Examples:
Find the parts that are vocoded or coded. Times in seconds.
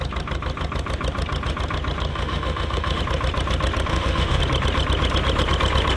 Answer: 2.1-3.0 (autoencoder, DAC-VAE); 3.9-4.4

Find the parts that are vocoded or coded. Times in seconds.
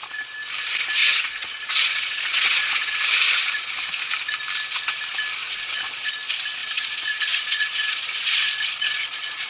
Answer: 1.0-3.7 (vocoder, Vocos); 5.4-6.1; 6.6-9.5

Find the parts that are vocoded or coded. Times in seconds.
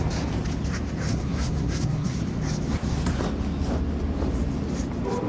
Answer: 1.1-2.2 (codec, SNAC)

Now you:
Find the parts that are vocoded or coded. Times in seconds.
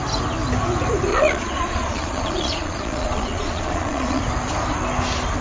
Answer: 1.1-4.2 (vocoder, Vocos)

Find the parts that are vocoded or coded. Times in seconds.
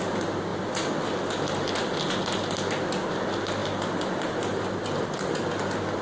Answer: none